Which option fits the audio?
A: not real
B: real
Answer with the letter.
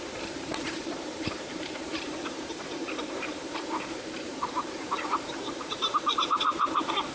A